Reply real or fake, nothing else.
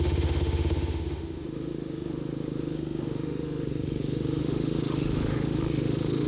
fake